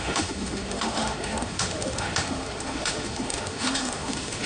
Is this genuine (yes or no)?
no